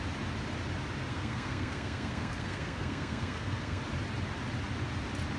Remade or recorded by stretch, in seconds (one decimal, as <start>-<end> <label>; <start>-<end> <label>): 0.0-1.1 recorded; 1.1-3.8 remade; 3.8-5.4 recorded